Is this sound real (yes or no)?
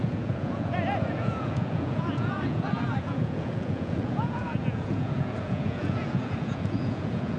no